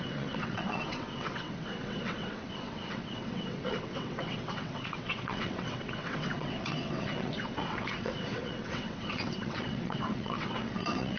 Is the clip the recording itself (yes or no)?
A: no